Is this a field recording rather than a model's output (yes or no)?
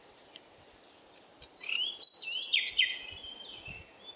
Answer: yes